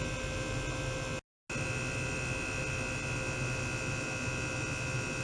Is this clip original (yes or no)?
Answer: yes